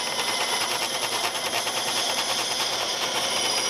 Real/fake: fake